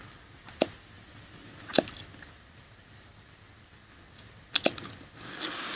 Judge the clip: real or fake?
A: real